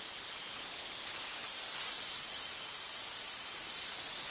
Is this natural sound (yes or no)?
yes